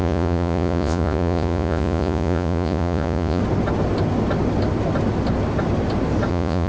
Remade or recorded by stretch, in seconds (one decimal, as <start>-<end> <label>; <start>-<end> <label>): 0.0-3.4 remade; 3.4-6.3 recorded; 6.3-6.7 remade